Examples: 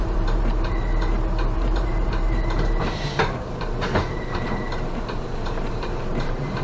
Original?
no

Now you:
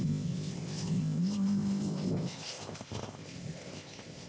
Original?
no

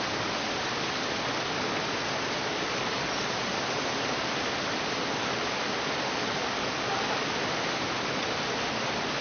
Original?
yes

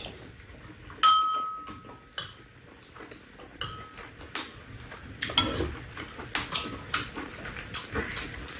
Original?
yes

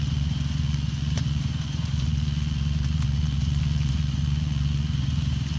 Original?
no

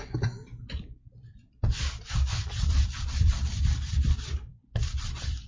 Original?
no